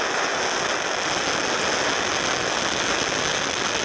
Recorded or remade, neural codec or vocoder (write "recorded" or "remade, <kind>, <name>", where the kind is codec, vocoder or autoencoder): recorded